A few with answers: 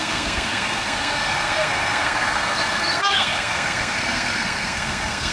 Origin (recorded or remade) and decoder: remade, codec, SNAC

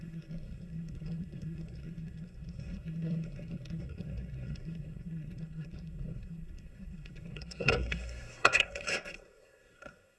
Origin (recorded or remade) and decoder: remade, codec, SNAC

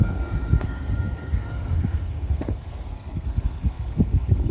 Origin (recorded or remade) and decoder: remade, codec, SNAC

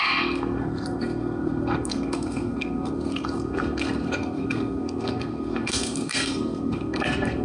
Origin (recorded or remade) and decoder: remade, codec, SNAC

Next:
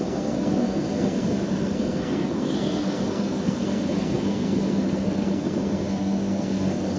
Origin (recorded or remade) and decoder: remade, codec, SNAC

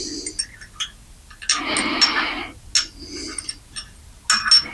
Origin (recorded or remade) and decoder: recorded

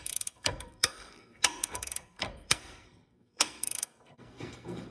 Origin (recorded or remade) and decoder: remade, codec, SNAC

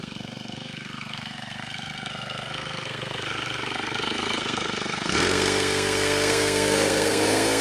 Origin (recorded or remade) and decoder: remade, codec, SNAC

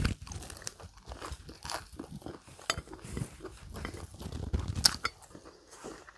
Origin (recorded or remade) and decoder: recorded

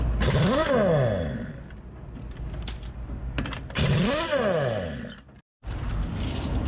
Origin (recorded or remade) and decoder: recorded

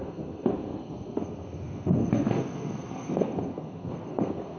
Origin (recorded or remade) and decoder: remade, codec, SNAC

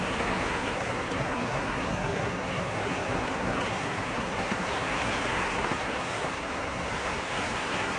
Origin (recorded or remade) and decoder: remade, codec, SNAC